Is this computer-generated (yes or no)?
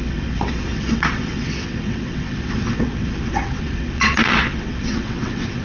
yes